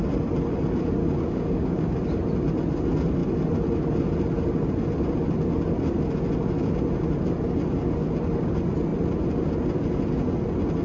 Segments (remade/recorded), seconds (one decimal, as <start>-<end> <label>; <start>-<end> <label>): 0.0-1.0 recorded; 1.0-1.9 remade; 1.9-10.8 recorded